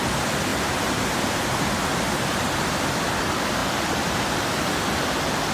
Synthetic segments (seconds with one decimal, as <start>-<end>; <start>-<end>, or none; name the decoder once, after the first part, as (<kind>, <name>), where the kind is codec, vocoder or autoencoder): 0.5-2.3 (vocoder, BigVGAN v2); 3.6-4.7